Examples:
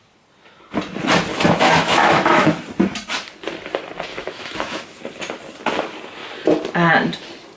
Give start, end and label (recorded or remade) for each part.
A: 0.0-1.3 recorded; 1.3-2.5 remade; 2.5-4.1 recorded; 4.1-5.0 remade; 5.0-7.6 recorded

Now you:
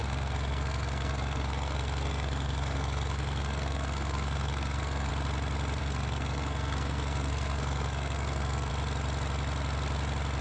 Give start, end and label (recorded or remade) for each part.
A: 0.0-5.1 remade; 5.1-5.8 recorded; 5.8-8.7 remade; 8.7-10.4 recorded

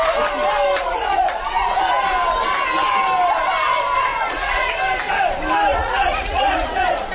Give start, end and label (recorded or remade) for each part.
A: 0.0-0.8 recorded; 0.8-1.8 remade; 1.8-4.1 recorded; 4.1-4.7 remade; 4.7-5.7 recorded; 5.7-7.1 remade

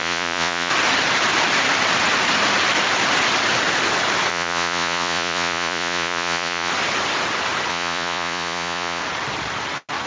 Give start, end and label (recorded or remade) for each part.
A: 0.0-0.7 remade; 0.7-4.3 recorded; 4.3-6.7 remade; 6.7-7.7 recorded; 7.7-9.0 remade; 9.0-10.1 recorded

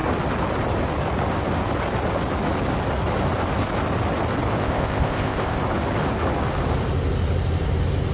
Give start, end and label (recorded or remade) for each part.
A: 0.0-4.6 recorded; 4.6-5.6 remade; 5.6-8.1 recorded